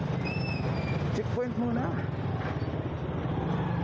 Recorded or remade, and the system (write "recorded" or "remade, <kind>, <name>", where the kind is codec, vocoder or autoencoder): recorded